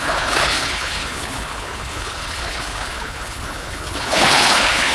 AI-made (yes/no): yes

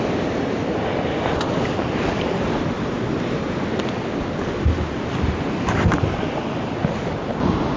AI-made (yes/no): no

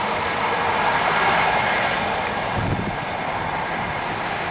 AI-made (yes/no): no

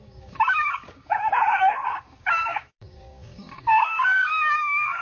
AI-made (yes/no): yes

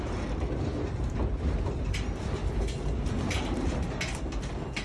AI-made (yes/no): no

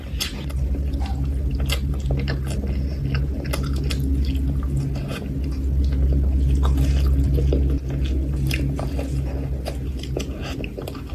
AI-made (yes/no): no